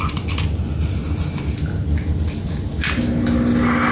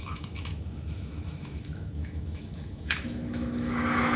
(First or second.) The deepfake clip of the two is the second